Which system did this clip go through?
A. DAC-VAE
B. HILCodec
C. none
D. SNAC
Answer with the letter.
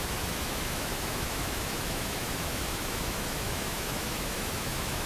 A